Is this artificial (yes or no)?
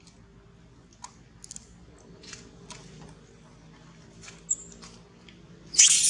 no